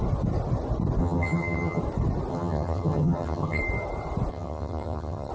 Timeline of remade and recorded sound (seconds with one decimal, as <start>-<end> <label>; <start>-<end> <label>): 0.0-1.0 recorded; 1.0-1.8 remade; 1.8-2.3 recorded; 2.3-3.6 remade; 3.6-4.3 recorded; 4.3-5.3 remade